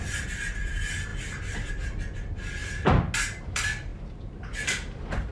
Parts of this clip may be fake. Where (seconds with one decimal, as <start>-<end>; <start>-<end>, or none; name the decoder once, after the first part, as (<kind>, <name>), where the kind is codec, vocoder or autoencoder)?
0.0-2.6 (vocoder, BigVGAN v2); 3.4-5.3